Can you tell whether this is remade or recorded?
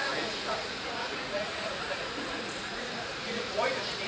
remade